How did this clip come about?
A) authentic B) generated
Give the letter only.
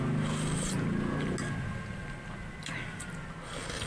A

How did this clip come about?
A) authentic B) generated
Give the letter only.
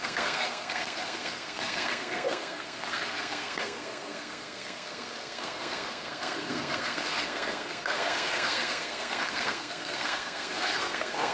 B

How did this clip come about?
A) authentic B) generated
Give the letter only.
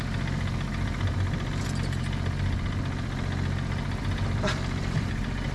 A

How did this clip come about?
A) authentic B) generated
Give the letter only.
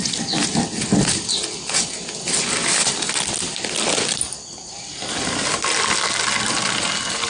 A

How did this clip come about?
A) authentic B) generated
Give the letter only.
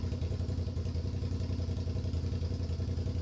A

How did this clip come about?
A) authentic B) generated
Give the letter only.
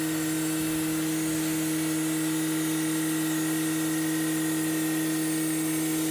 A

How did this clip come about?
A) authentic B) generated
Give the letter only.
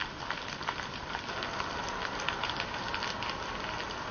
A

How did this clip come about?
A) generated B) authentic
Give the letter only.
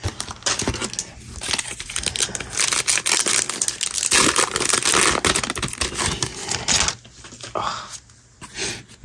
B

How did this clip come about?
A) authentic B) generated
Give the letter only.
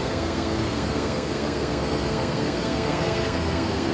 B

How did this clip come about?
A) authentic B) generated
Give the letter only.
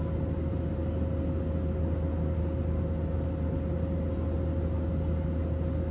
A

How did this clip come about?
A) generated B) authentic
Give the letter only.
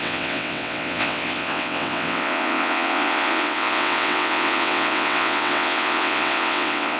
A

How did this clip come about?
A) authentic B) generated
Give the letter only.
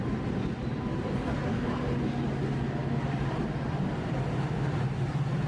A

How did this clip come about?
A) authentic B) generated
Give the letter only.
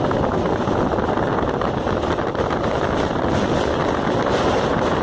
A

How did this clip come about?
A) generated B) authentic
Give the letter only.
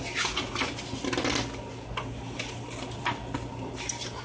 B